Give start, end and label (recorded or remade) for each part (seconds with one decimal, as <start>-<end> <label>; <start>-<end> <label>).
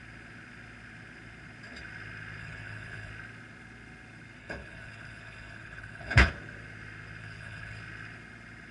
0.0-2.4 recorded; 2.4-3.1 remade; 3.1-4.4 recorded; 4.4-6.3 remade; 6.3-7.2 recorded; 7.2-7.8 remade; 7.8-8.7 recorded